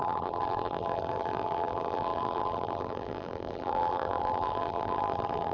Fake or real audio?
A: fake